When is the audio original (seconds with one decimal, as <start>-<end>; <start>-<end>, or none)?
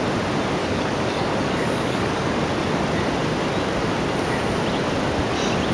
0.0-0.6; 2.4-5.7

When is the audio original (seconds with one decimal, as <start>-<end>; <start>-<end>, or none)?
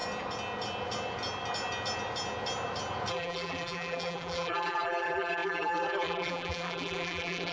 0.0-3.1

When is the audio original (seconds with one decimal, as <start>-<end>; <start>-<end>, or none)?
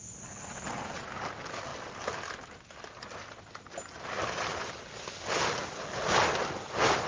0.0-7.1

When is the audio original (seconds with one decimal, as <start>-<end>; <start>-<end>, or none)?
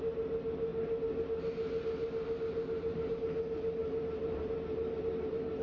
0.0-5.6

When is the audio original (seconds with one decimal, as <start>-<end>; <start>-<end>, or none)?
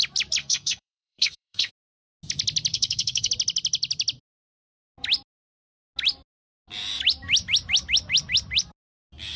0.0-0.4; 1.7-2.7; 3.3-9.4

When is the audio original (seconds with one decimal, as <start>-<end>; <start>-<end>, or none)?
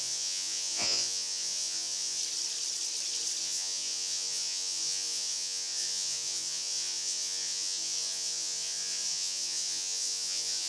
2.2-3.4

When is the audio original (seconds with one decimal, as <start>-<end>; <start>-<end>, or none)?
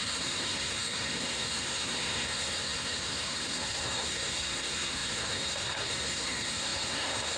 none